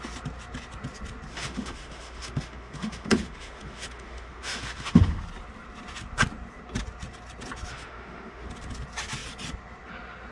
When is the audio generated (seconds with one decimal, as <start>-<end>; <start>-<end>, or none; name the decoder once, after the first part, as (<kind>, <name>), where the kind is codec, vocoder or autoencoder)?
1.3-5.2 (autoencoder, DAC-VAE); 7.7-8.5